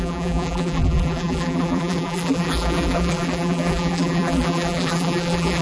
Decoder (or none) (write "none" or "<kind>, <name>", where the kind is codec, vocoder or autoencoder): vocoder, BigVGAN v2